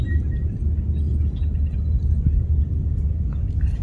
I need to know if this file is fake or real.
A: real